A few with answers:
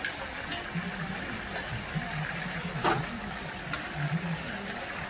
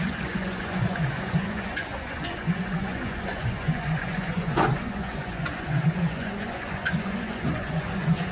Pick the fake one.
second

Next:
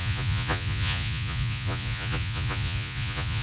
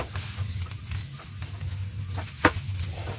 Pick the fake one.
first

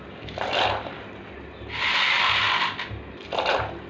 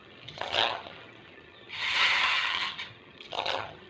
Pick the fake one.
second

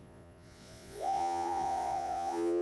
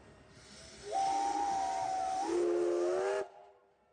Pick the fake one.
first